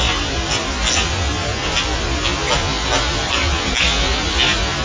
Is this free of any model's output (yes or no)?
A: yes